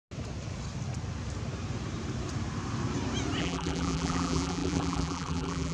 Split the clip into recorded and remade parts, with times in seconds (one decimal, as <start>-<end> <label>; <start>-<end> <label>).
0.0-3.4 recorded; 3.4-5.7 remade